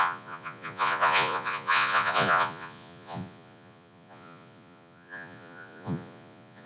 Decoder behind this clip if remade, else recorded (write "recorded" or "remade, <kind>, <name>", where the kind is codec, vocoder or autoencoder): remade, vocoder, Vocos